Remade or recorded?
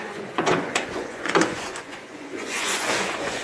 remade